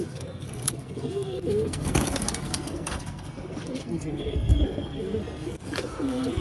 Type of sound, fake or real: fake